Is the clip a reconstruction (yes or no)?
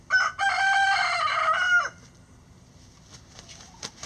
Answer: no